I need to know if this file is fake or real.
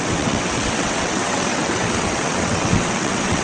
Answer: fake